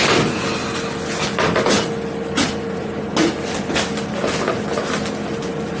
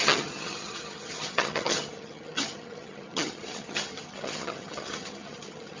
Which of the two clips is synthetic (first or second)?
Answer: second